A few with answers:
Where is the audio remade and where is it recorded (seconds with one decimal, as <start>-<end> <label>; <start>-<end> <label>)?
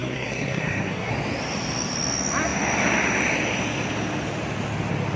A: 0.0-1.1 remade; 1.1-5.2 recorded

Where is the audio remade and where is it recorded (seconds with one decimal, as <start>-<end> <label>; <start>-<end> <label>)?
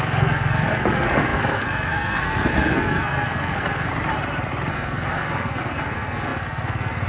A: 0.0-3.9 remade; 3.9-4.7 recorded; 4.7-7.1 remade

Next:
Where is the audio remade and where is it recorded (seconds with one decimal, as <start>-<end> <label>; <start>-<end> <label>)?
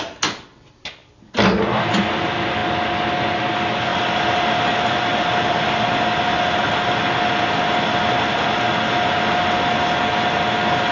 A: 0.0-10.9 recorded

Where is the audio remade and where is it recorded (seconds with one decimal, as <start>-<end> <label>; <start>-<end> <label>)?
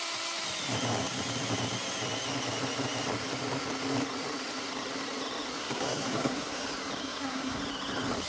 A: 0.0-5.6 recorded; 5.6-6.6 remade; 6.6-7.0 recorded; 7.0-7.6 remade; 7.6-8.3 recorded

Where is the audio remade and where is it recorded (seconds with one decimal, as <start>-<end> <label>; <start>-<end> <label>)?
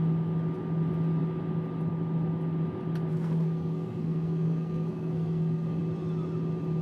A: 0.0-3.1 recorded; 3.1-5.8 remade; 5.8-6.8 recorded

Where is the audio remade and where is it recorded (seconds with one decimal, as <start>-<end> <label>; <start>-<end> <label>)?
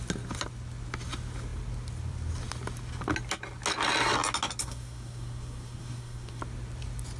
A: 0.0-4.6 recorded; 4.6-6.4 remade; 6.4-7.2 recorded